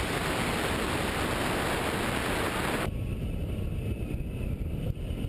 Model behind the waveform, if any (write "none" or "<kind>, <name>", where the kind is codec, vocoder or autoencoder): none